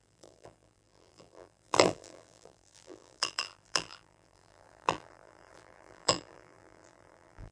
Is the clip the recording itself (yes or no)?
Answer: no